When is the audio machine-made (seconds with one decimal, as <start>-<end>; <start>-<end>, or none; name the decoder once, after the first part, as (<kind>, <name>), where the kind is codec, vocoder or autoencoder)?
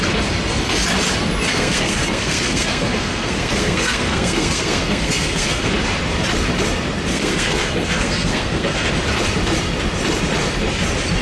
1.5-5.7 (codec, SNAC); 7.1-8.9